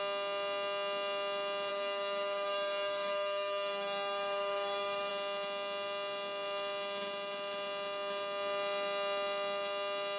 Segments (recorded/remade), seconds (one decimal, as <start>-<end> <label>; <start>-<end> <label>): 0.0-1.7 recorded; 1.7-5.1 remade; 5.1-10.2 recorded